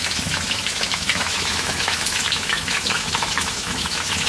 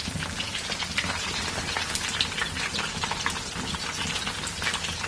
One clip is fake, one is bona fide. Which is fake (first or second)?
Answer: first